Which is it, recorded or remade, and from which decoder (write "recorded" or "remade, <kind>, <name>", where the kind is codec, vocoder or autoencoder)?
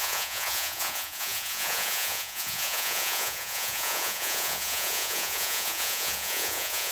remade, vocoder, Vocos